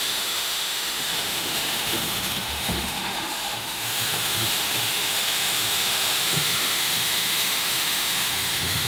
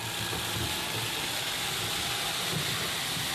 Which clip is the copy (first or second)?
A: first